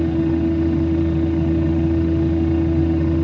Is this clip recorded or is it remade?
remade